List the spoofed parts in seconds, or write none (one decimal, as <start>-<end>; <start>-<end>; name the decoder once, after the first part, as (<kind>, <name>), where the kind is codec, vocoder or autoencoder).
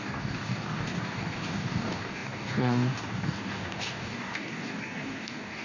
0.0-5.6 (codec, DAC)